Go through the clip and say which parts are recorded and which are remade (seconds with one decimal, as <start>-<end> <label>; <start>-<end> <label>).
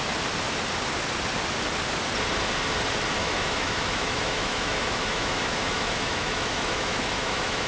0.0-3.2 recorded; 3.2-7.7 remade